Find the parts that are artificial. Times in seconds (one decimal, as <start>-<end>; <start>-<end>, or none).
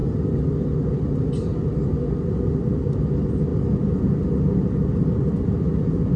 none